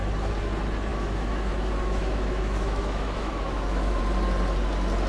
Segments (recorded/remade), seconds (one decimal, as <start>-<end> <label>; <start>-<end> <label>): 0.0-0.9 recorded; 0.9-4.0 remade; 4.0-5.1 recorded

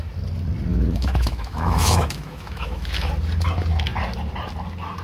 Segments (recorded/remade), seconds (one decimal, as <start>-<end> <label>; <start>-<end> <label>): 0.0-0.7 recorded; 0.7-3.1 remade; 3.1-5.0 recorded

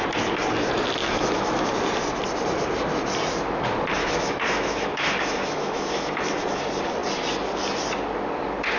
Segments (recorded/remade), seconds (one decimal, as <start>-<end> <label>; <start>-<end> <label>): 0.0-1.0 recorded; 1.0-1.7 remade; 1.7-4.0 recorded; 4.0-6.6 remade; 6.6-8.8 recorded

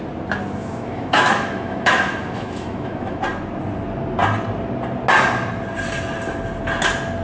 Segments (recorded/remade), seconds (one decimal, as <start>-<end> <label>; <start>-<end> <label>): 0.0-0.6 recorded; 0.6-3.2 remade; 3.2-7.2 recorded

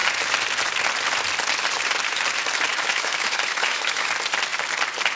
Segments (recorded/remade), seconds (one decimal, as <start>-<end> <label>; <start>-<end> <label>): 0.0-2.7 recorded; 2.7-4.1 remade; 4.1-5.2 recorded

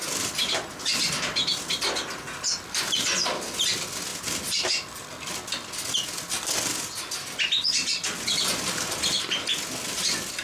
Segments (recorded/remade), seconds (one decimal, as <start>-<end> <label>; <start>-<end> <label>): 0.0-10.4 recorded

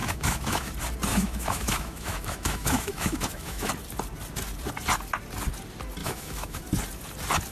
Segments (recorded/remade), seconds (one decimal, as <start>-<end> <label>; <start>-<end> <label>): 0.0-0.7 remade; 0.7-1.1 recorded; 1.1-3.7 remade; 3.7-6.0 recorded; 6.0-6.6 remade; 6.6-7.5 recorded